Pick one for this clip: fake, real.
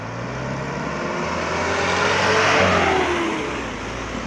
real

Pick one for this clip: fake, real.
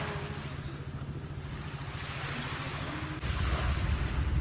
real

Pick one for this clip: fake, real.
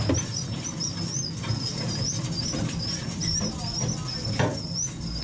real